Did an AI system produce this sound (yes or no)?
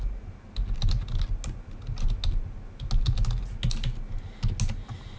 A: no